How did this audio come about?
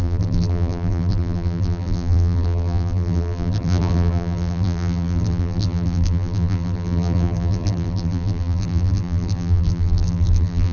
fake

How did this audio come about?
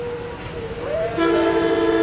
fake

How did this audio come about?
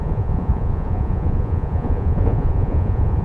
fake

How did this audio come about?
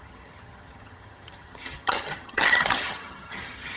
fake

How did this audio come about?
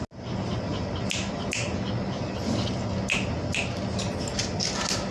real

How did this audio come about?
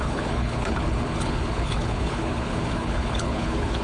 fake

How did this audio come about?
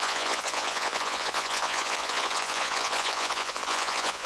fake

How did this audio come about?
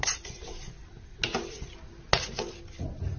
real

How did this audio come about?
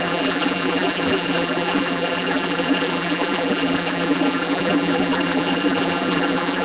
fake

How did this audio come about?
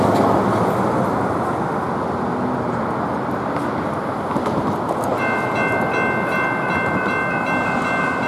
real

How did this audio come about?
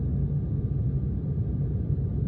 real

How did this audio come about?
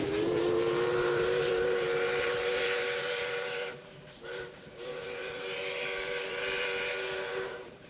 fake